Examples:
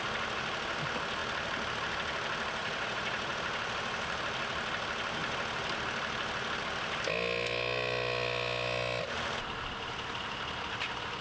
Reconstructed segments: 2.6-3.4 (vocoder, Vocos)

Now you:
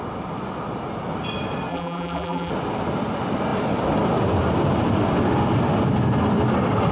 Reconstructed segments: 1.7-2.5 (vocoder, BigVGAN v2)